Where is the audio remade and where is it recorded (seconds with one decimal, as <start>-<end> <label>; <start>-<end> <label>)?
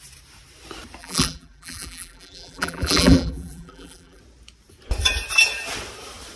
0.0-1.0 recorded; 1.0-4.2 remade; 4.2-6.4 recorded